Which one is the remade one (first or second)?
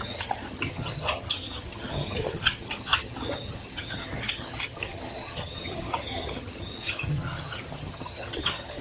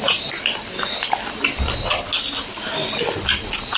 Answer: first